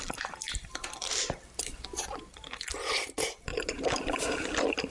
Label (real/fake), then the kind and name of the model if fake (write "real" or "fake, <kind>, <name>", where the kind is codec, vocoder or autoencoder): real